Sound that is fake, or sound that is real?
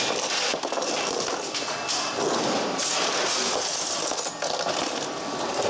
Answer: real